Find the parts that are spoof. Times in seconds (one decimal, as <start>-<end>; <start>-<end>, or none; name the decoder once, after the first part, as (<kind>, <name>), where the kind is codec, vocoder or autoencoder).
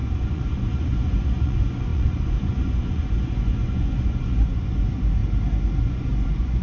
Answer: 0.0-5.2 (vocoder, Vocos); 5.8-6.6